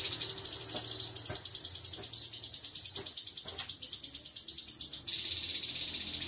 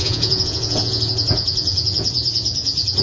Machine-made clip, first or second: second